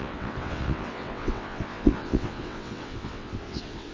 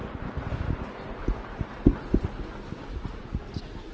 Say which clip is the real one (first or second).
second